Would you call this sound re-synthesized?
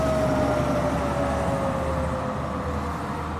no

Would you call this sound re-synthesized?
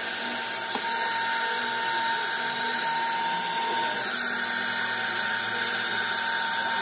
no